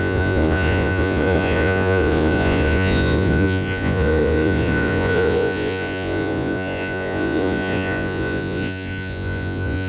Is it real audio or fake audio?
fake